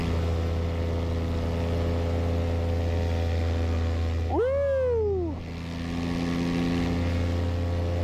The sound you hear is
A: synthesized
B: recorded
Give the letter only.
B